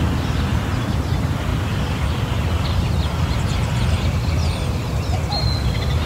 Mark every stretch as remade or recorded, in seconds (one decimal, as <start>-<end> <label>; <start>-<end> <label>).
0.0-6.1 recorded